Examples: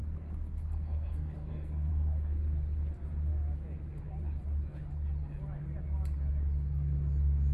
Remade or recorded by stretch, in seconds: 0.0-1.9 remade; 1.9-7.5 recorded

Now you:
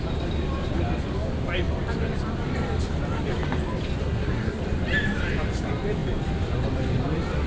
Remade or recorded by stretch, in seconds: 0.0-4.0 recorded; 4.0-4.6 remade; 4.6-7.5 recorded

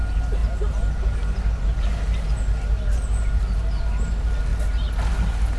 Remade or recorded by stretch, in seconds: 0.0-5.6 recorded